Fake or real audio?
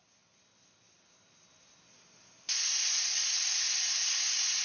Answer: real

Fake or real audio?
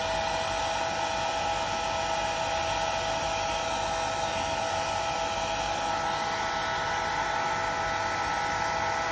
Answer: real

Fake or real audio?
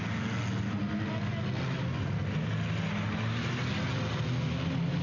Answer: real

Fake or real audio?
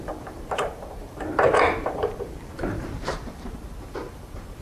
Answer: fake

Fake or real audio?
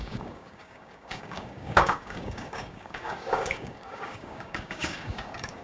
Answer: fake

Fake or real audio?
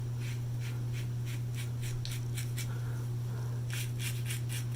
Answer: real